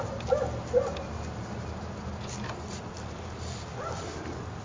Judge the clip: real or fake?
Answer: real